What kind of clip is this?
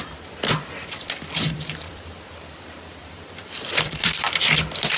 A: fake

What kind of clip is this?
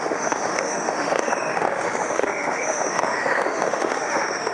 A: fake